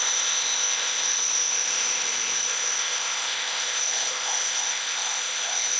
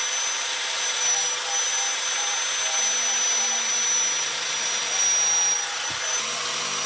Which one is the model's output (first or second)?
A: first